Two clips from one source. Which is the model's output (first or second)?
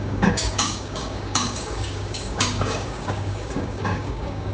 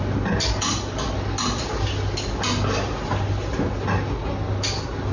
first